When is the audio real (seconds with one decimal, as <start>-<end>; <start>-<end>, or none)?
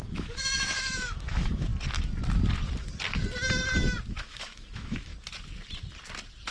1.7-4.2; 5.1-6.5